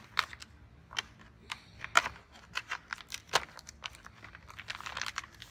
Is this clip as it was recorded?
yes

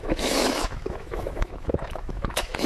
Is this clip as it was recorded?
no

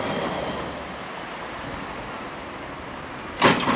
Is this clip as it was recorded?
yes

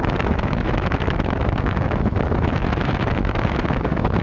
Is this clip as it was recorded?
no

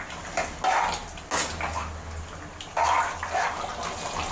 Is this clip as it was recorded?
yes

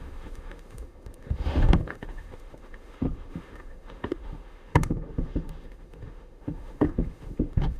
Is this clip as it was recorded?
no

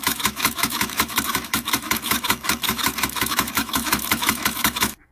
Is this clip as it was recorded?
no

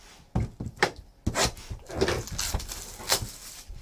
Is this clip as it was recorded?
yes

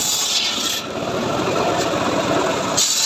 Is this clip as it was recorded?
yes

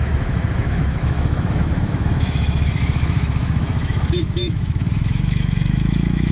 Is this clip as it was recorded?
no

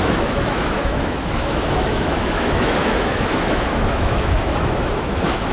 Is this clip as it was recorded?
no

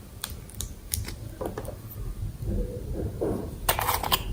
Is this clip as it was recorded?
yes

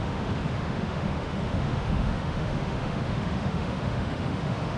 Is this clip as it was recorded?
no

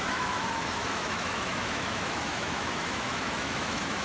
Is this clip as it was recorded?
no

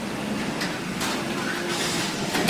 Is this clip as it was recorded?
yes